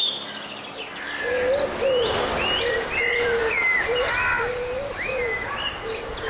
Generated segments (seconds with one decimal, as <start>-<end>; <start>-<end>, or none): none